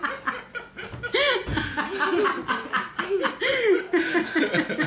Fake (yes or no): no